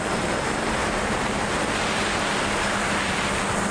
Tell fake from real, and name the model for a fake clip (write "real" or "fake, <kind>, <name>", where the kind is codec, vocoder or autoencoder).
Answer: real